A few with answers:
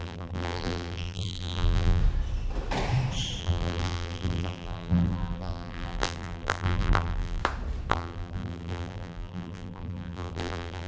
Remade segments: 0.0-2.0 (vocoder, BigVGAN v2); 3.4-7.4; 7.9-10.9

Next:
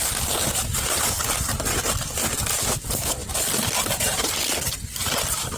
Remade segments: none

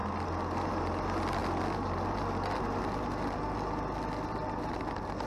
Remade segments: none

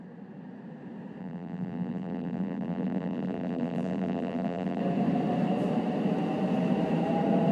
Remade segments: 1.2-4.8 (vocoder, BigVGAN v2)

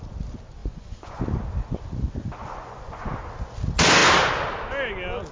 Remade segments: 0.6-1.2 (vocoder, Vocos); 2.5-3.1

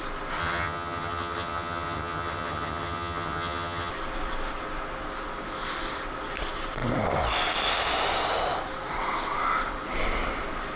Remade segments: 0.4-3.9 (vocoder, HiFi-GAN)